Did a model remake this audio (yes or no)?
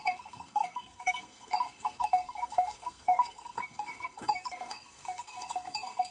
yes